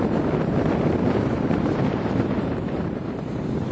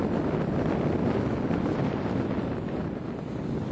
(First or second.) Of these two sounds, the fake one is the first